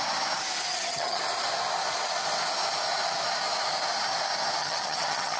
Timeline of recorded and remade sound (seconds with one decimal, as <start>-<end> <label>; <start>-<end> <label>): 0.0-0.7 recorded; 0.7-1.2 remade; 1.2-4.6 recorded; 4.6-5.4 remade